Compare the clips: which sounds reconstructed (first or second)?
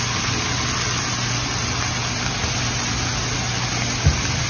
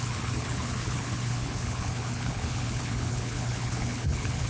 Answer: second